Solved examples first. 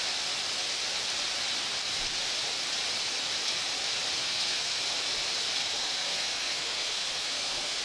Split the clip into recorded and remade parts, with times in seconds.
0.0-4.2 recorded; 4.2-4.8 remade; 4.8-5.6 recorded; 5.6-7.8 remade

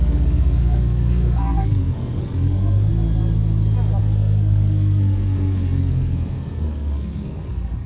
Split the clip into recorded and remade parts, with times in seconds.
0.0-2.9 remade; 2.9-4.0 recorded; 4.0-7.9 remade

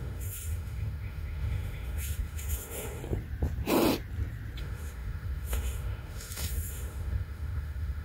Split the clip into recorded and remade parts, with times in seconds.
0.0-3.0 remade; 3.0-4.6 recorded; 4.6-8.0 remade

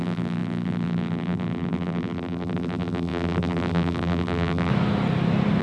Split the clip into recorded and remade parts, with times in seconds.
0.0-4.7 remade; 4.7-5.6 recorded

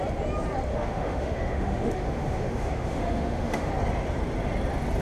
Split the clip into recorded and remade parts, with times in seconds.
0.0-0.7 recorded; 0.7-3.7 remade; 3.7-5.0 recorded